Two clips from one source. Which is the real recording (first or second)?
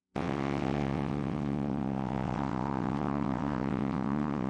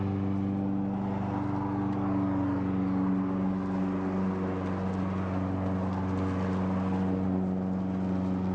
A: second